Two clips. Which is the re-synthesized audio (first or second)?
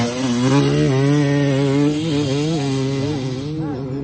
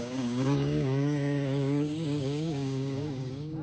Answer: second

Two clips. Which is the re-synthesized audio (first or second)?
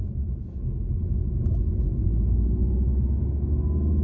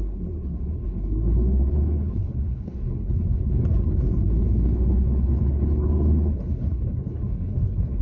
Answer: second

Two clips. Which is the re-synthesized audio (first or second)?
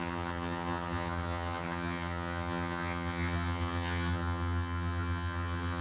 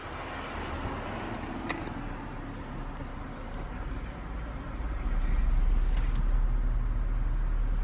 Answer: first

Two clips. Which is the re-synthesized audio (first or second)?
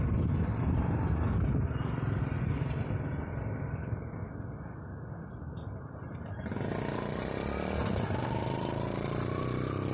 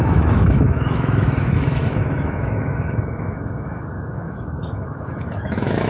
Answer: second